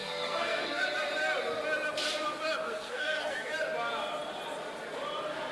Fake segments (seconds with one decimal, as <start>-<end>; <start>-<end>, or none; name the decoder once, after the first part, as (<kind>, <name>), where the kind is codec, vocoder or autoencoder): 0.0-0.8 (codec, SNAC); 2.6-3.5

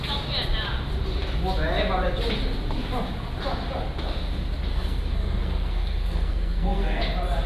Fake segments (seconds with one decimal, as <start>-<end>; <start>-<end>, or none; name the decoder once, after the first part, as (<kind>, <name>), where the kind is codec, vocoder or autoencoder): 4.7-7.0 (codec, SNAC)

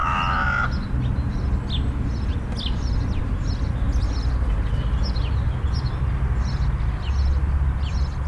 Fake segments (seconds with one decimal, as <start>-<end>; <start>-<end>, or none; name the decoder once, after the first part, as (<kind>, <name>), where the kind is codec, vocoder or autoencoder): none

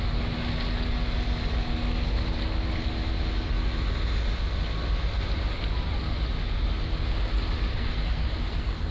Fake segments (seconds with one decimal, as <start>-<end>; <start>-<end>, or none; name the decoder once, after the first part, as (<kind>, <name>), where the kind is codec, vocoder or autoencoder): 7.7-8.9 (codec, SNAC)

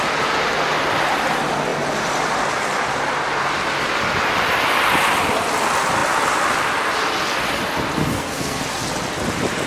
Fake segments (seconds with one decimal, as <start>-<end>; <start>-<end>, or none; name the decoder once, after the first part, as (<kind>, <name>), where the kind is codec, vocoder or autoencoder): 8.0-8.6 (codec, SNAC)